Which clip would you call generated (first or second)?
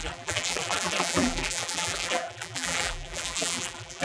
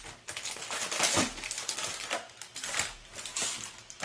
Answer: first